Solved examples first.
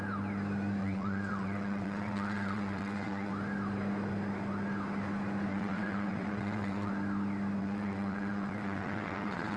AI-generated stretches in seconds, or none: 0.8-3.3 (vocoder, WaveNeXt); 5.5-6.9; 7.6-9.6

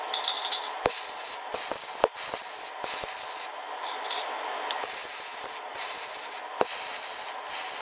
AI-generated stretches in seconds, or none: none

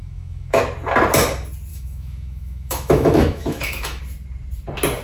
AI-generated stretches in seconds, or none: 0.0-0.6 (autoencoder, DAC-VAE); 1.7-4.0